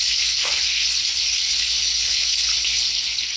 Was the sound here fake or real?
fake